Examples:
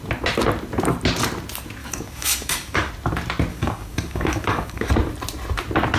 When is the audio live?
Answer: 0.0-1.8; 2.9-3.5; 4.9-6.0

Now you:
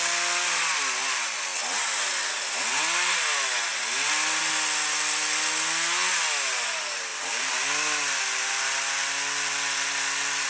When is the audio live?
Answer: 0.0-10.5

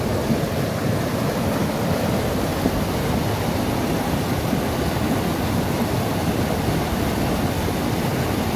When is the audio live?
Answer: 0.0-5.3; 5.8-8.6

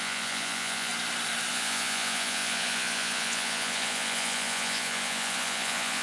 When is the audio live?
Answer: 0.9-1.5

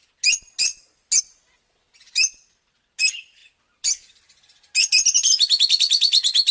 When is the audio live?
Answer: 0.0-6.5

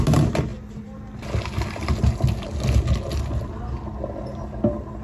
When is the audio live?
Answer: 0.0-5.0

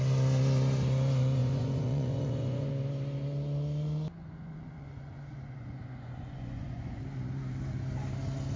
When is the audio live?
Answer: 0.0-1.4; 2.7-4.2; 7.0-8.6

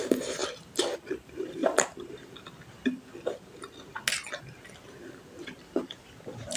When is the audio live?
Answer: 0.4-1.1; 1.6-5.1